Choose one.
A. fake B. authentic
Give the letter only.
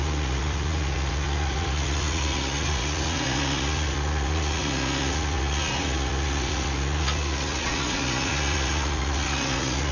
A